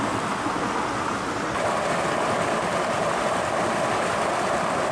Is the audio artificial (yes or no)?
no